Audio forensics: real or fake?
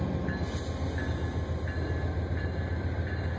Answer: real